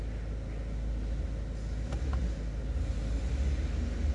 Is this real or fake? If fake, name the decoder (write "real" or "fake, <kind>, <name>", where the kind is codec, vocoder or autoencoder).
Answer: real